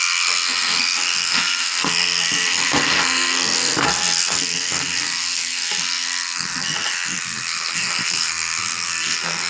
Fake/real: fake